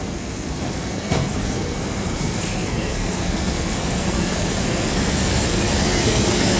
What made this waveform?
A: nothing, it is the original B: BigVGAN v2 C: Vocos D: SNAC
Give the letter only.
D